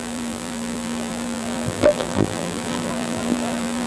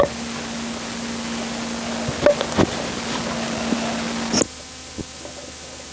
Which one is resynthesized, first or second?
first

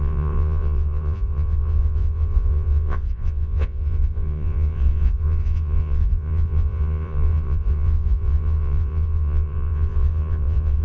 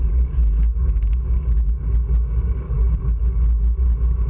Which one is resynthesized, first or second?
first